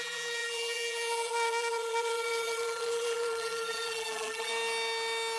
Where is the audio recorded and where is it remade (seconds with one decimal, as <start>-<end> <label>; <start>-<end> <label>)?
0.0-4.5 remade; 4.5-5.4 recorded